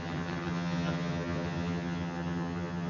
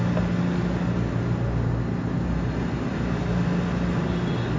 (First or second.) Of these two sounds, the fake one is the first